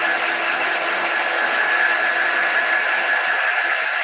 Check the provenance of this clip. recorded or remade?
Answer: recorded